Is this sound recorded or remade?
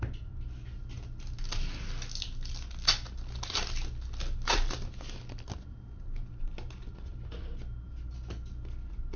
recorded